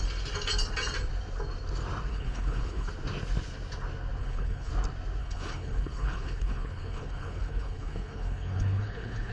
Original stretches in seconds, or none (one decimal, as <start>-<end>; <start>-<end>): 0.0-2.1; 2.9-4.2; 4.7-5.2